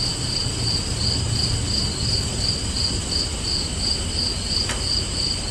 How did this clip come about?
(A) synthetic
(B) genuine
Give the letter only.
B